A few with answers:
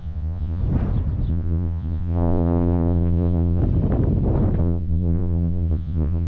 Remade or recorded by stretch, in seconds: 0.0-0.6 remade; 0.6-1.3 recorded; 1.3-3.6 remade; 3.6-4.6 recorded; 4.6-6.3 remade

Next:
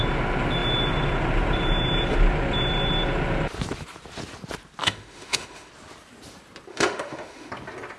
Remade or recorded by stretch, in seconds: 0.0-4.8 recorded; 4.8-5.7 remade; 5.7-6.7 recorded; 6.7-7.5 remade; 7.5-8.0 recorded

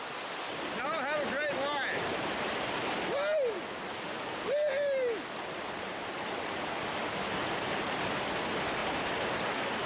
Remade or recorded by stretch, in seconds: 0.0-9.9 recorded

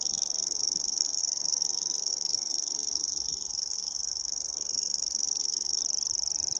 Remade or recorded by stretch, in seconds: 0.0-5.8 remade; 5.8-6.6 recorded

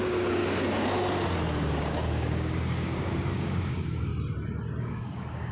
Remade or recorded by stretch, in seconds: 0.0-0.4 remade; 0.4-1.7 recorded; 1.7-4.1 remade; 4.1-4.8 recorded; 4.8-5.5 remade

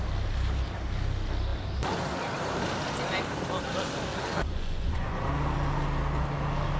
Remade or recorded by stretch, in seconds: 0.0-4.1 recorded; 4.1-5.3 remade; 5.3-6.8 recorded

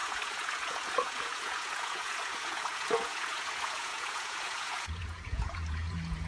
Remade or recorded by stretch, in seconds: 0.0-6.3 remade

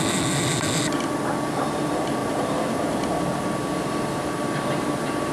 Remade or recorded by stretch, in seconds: 0.0-5.3 recorded